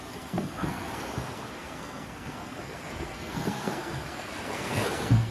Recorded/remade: remade